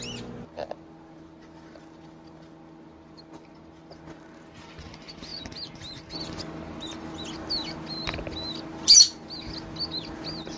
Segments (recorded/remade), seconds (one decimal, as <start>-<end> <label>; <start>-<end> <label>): 0.0-10.6 recorded